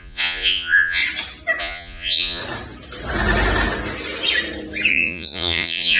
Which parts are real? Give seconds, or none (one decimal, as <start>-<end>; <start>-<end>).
1.0-1.6; 2.4-4.9